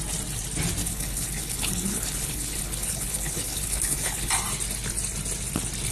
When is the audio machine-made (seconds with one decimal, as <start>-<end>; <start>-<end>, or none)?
0.8-4.3